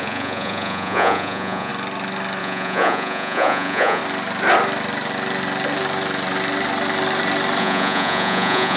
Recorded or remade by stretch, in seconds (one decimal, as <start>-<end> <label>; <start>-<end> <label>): 0.0-1.7 remade; 1.7-2.4 recorded; 2.4-4.0 remade; 4.0-7.6 recorded; 7.6-8.8 remade